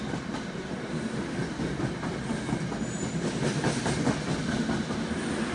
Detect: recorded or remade recorded